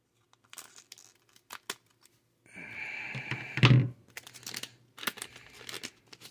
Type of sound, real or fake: real